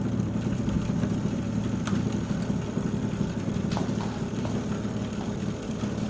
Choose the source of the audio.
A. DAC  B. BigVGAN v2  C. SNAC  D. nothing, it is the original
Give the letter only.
B